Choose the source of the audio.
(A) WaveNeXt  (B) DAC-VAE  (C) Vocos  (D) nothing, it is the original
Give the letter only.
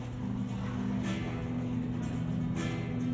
D